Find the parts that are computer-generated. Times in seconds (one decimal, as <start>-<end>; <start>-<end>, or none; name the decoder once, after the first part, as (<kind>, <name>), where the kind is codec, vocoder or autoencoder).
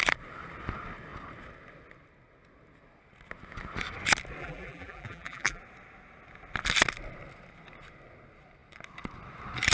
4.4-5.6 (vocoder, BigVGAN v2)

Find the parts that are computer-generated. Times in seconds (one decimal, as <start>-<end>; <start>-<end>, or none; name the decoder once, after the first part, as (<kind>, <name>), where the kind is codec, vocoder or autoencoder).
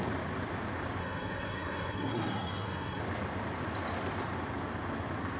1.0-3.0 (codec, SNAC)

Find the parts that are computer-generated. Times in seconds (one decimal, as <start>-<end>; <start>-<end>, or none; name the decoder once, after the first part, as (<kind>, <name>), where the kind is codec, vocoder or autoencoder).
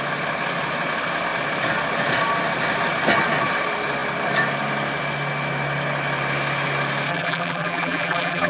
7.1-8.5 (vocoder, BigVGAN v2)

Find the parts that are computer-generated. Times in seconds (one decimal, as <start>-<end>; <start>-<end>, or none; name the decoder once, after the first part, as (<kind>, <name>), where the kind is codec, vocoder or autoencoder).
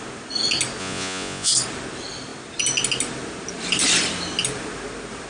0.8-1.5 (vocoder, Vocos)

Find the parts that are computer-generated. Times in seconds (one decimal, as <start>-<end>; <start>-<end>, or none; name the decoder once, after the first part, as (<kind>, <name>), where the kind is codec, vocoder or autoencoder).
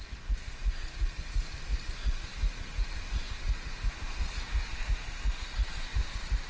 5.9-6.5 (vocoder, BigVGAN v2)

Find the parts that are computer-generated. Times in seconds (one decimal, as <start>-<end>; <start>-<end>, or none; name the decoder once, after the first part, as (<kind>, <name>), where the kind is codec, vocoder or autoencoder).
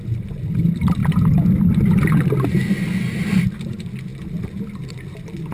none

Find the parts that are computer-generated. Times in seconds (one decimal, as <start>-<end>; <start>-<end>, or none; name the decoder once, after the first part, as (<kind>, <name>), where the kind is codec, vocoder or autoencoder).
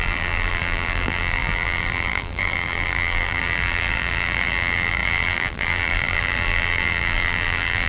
0.0-7.9 (vocoder, BigVGAN v2)